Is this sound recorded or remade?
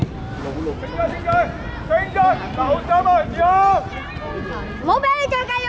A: recorded